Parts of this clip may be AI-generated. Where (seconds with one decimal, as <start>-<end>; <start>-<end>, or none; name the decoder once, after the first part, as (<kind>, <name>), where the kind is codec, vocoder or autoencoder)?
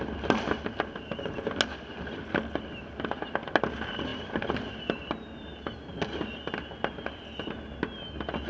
none